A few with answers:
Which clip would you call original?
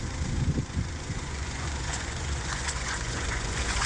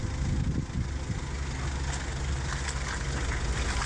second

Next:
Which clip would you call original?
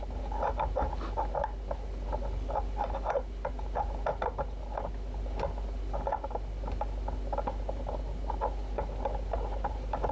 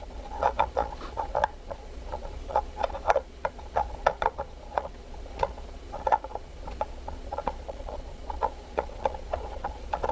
first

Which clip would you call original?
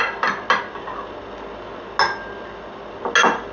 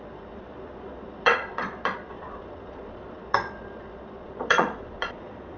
first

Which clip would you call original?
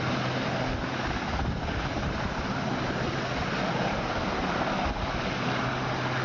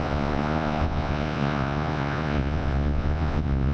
first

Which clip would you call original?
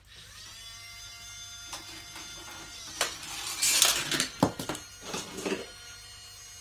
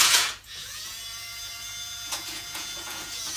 first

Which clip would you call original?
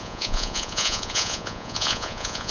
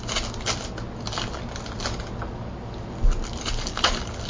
second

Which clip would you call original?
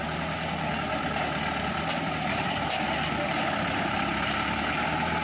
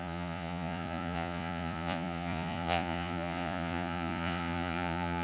first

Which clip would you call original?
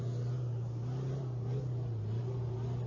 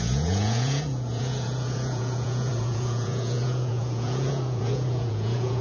first